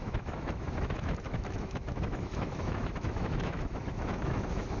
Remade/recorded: remade